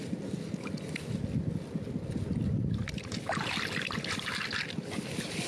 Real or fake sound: real